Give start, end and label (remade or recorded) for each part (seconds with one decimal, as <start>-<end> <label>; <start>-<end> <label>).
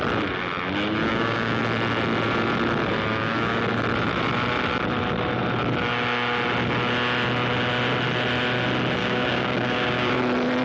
0.0-1.1 recorded; 1.1-1.6 remade; 1.6-3.1 recorded; 3.1-3.6 remade; 3.6-9.0 recorded; 9.0-10.1 remade; 10.1-10.6 recorded